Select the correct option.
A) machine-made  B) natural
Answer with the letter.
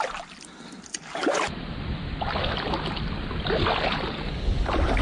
B